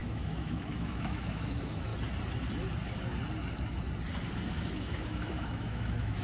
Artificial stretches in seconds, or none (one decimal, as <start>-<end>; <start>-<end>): 0.0-1.9; 4.5-6.2